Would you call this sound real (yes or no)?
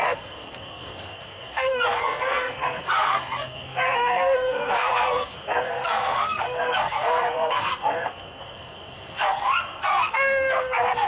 no